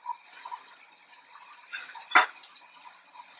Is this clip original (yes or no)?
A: yes